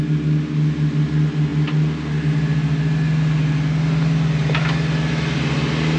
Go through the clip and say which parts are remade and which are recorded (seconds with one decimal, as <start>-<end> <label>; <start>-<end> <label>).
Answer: 0.0-6.0 recorded